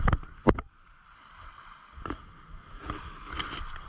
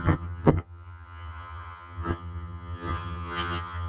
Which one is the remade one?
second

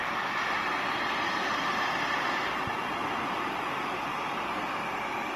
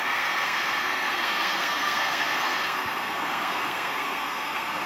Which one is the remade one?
second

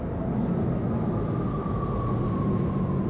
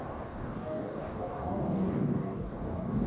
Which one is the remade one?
second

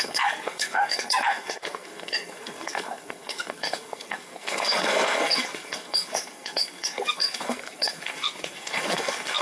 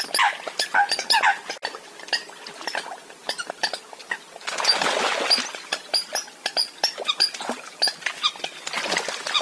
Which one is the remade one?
first